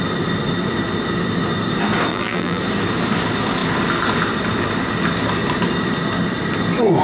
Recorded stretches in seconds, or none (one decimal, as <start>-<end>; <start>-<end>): 0.0-2.1; 2.6-7.0

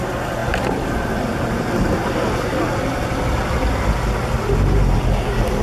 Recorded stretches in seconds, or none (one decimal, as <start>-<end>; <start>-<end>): 0.0-0.4; 2.1-5.6

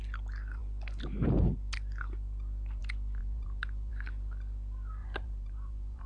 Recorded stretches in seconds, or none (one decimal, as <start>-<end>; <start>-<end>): 0.0-3.2; 3.9-5.0

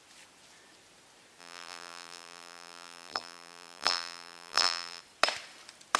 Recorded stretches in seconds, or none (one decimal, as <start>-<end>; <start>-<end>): 0.0-1.4; 5.0-6.0